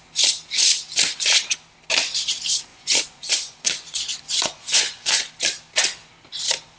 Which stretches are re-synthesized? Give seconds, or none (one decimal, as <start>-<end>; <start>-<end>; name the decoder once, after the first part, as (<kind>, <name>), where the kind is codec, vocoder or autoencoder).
2.7-5.3 (vocoder, Vocos)